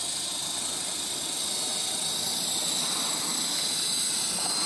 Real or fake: real